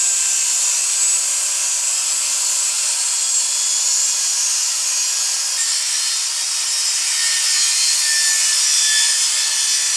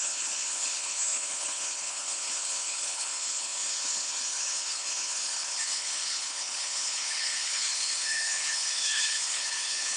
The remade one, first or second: second